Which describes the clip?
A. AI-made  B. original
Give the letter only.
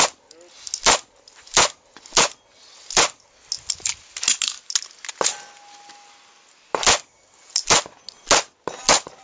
B